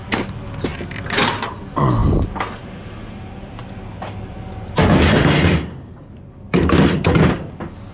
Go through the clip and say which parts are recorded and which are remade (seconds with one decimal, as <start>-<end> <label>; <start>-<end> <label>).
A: 0.0-7.9 recorded